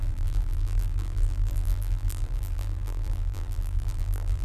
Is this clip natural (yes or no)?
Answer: no